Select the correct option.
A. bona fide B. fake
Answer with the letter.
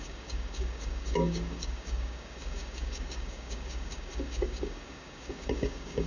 B